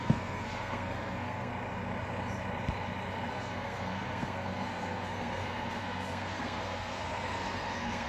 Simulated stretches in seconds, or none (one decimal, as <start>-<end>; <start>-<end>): 0.0-1.5; 3.3-8.1

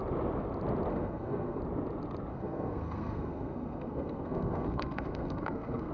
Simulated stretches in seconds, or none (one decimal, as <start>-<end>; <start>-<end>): 0.9-1.6; 2.3-5.9

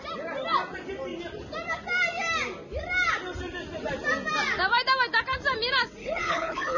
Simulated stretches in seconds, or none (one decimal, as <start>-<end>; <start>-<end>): 6.0-6.8